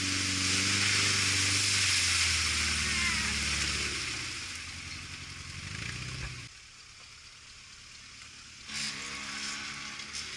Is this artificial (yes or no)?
no